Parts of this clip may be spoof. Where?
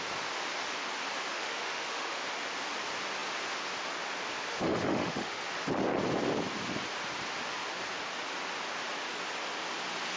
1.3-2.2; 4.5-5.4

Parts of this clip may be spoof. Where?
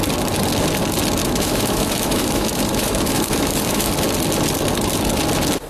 1.2-3.9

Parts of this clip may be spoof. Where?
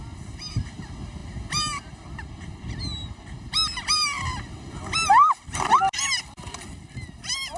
none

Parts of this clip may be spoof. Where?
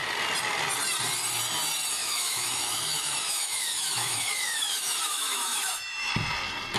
2.0-6.1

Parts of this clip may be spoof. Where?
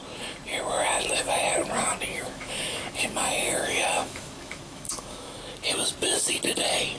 2.1-5.4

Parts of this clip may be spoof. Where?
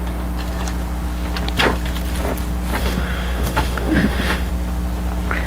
2.8-4.5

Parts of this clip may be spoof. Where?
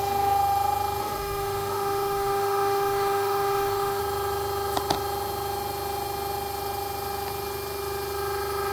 1.0-4.0